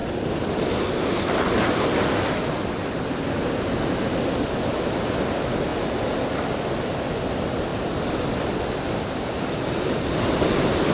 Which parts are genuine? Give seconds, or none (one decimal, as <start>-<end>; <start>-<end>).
0.0-10.9